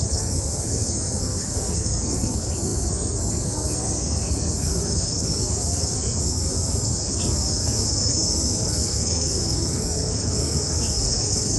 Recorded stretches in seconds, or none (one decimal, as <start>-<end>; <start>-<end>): none